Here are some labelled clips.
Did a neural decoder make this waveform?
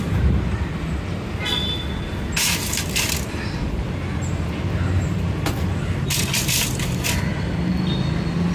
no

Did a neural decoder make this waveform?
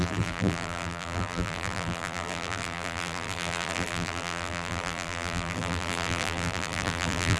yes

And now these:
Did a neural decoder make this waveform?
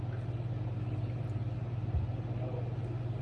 no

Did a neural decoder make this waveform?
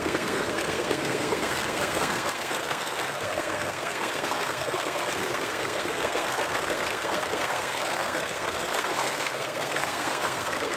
yes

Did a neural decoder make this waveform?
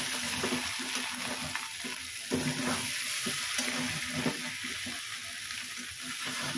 no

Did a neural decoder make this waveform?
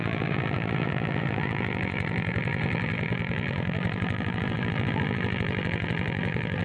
yes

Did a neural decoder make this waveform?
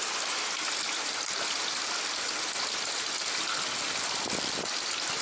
no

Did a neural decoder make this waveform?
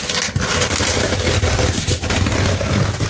no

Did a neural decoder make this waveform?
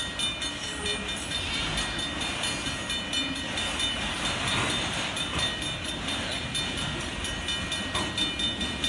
no